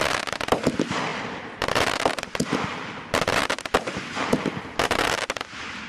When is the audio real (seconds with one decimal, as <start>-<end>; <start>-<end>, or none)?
0.0-5.9